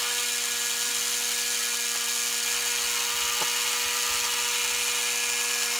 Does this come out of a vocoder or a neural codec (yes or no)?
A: no